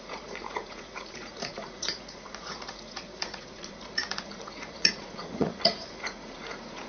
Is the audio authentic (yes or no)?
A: no